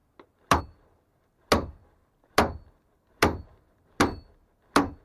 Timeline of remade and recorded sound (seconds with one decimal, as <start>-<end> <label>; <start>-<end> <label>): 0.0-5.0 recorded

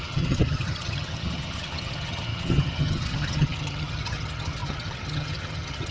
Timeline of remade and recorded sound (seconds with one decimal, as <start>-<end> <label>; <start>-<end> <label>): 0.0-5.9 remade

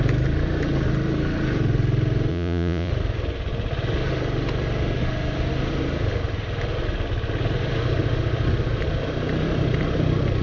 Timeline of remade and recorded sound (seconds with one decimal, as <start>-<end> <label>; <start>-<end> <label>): 0.0-2.3 recorded; 2.3-2.9 remade; 2.9-10.4 recorded